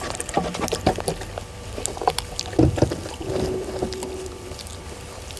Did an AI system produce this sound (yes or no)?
no